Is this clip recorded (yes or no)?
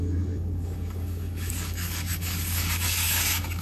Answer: no